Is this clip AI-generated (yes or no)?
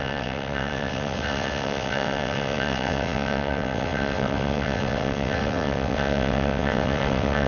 yes